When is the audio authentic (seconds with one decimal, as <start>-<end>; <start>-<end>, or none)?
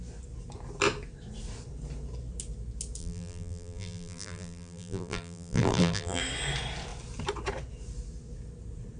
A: 0.0-3.0; 6.2-9.0